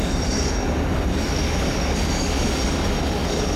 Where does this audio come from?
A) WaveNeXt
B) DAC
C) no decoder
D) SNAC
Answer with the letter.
B